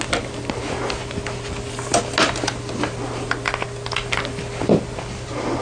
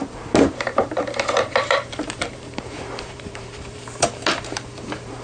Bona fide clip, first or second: first